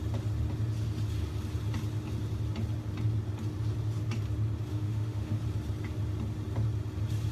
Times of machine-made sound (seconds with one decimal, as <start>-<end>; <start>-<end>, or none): 4.7-5.4